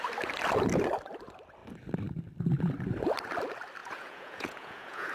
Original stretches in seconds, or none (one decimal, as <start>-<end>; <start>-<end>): 0.0-3.8